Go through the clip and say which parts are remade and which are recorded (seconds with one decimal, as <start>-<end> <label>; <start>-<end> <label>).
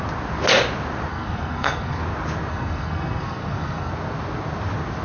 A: 0.0-1.1 recorded; 1.1-2.0 remade; 2.0-2.5 recorded; 2.5-3.9 remade; 3.9-5.0 recorded